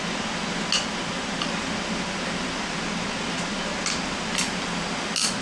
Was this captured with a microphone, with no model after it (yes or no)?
yes